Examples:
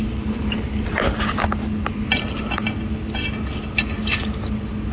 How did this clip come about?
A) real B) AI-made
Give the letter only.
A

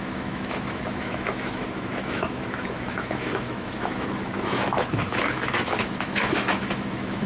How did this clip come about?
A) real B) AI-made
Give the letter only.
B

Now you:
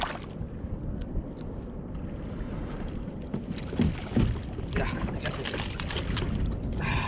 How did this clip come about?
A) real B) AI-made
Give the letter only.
A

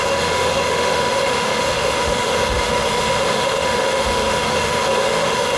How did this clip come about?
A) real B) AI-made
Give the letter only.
B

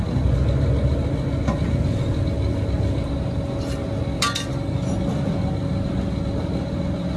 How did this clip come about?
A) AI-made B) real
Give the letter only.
B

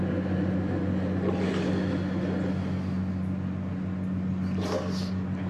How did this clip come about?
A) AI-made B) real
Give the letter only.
B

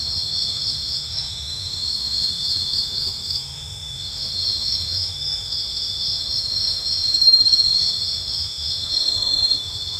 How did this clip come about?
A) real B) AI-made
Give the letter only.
B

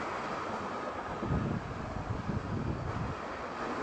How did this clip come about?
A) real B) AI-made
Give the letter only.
A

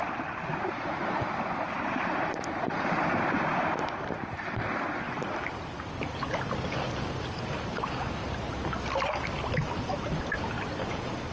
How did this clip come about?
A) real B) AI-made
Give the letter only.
A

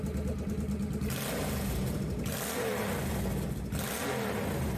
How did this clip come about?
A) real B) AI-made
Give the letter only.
A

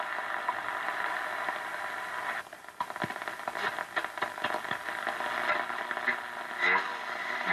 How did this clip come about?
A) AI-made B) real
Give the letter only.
B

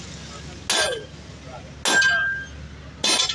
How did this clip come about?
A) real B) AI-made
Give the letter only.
A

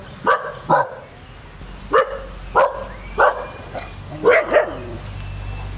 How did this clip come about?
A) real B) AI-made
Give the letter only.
A